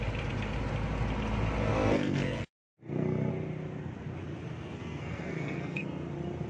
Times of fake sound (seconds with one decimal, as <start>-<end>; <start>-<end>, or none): 1.7-3.3; 4.5-6.1